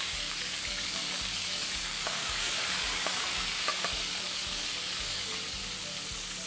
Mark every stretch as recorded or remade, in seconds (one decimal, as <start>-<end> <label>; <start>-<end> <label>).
0.0-5.6 remade; 5.6-6.5 recorded